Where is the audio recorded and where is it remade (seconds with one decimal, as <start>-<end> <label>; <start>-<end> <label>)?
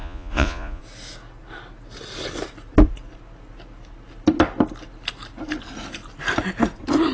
0.0-0.8 remade; 0.8-7.1 recorded